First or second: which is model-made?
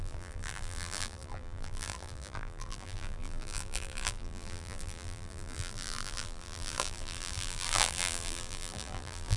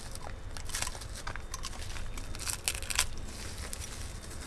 first